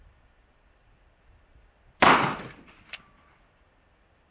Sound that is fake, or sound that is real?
fake